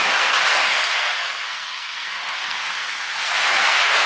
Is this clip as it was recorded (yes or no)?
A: no